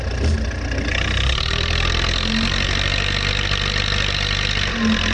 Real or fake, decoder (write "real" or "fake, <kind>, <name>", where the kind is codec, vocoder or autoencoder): real